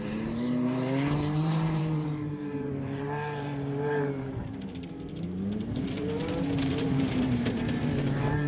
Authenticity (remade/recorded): remade